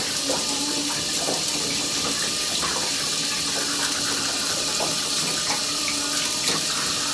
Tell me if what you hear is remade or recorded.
recorded